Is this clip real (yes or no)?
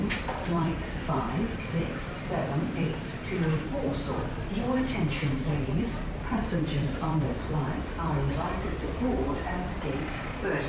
no